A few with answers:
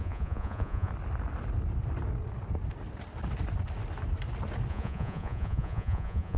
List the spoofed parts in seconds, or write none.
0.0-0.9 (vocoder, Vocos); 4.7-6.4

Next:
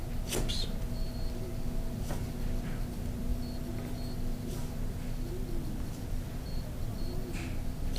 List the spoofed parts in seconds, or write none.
none

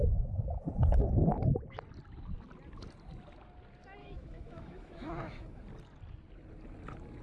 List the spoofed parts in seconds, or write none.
4.0-5.6 (autoencoder, DAC-VAE)

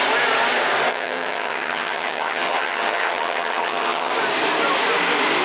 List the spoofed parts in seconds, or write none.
0.9-4.1 (vocoder, HiFi-GAN)

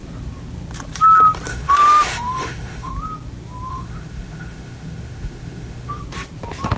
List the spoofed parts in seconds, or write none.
1.5-2.9 (autoencoder, DAC-VAE); 3.7-6.0

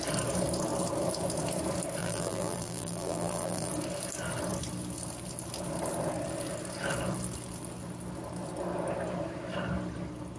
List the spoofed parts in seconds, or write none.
2.0-3.7 (vocoder, BigVGAN v2)

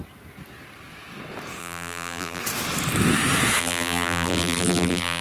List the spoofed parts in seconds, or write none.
1.6-2.4 (vocoder, BigVGAN v2); 3.6-5.2

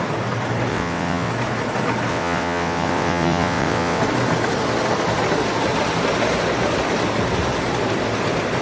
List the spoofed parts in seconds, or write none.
0.7-1.3 (vocoder, WaveNeXt); 2.1-4.0